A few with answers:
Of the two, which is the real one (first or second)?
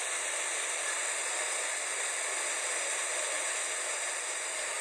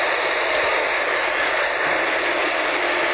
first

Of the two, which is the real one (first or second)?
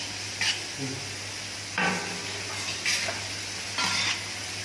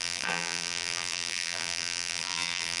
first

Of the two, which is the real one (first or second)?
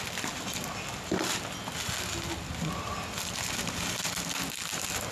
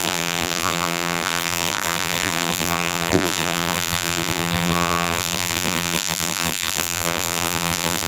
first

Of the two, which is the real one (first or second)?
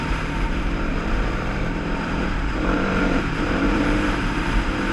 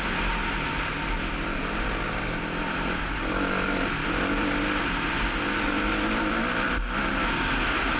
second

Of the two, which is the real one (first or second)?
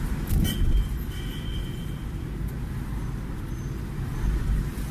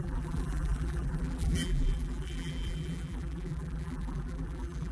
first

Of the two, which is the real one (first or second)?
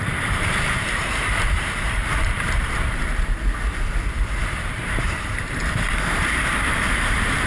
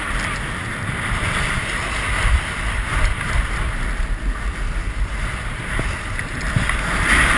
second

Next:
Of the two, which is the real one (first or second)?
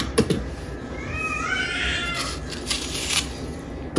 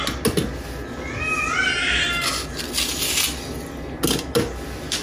second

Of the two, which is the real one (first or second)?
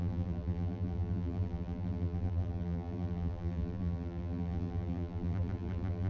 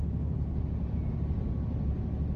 second